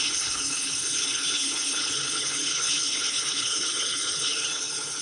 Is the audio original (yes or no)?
no